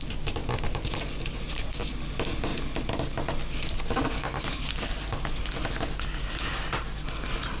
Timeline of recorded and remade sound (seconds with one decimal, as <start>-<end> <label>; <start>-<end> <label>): 0.0-7.6 recorded